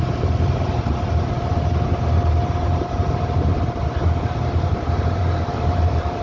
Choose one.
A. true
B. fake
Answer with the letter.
B